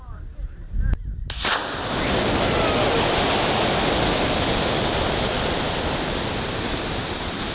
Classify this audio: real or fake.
real